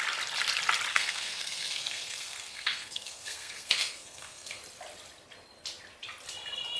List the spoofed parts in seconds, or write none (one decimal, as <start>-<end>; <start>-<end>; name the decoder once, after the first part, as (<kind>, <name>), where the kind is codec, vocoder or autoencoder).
0.9-4.6 (codec, SNAC)